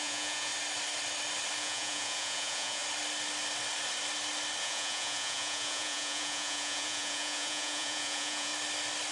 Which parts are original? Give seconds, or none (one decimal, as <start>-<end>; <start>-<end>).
0.5-1.6; 2.8-4.6; 8.5-9.1